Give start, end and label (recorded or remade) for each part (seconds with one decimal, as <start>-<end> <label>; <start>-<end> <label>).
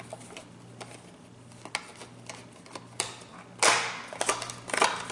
0.0-5.1 recorded